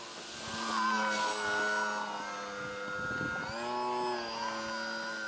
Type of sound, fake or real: real